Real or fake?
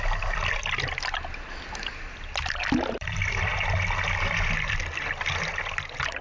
real